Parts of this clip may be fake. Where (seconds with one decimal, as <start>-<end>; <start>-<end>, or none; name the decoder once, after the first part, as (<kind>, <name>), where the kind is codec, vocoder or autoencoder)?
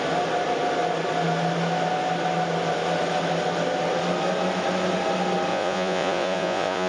5.5-6.9 (vocoder, Vocos)